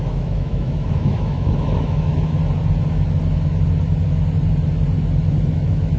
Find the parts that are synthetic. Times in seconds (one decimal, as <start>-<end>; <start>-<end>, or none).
0.0-2.4; 5.5-6.0